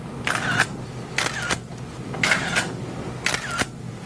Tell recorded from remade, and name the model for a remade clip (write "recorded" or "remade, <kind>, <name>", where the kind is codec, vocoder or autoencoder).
recorded